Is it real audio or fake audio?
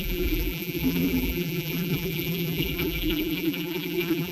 fake